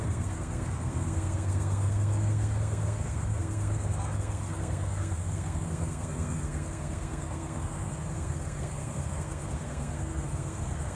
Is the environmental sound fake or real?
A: fake